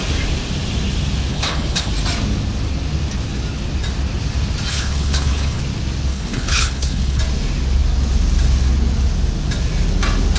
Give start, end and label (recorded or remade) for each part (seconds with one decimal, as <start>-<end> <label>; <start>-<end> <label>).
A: 0.0-1.3 recorded; 1.3-1.9 remade; 1.9-4.7 recorded; 4.7-5.6 remade; 5.6-6.1 recorded; 6.1-7.2 remade; 7.2-10.4 recorded